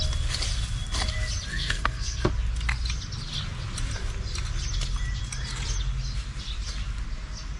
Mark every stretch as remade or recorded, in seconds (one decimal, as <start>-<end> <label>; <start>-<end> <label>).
0.0-1.5 recorded; 1.5-2.3 remade; 2.3-7.6 recorded